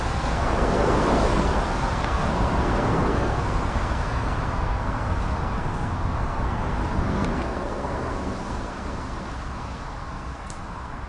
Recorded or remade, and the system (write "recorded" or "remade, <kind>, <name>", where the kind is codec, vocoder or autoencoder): remade, codec, SNAC